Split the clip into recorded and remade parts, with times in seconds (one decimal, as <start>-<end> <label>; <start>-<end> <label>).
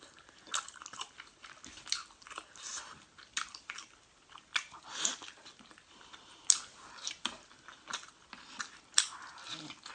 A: 0.0-9.9 recorded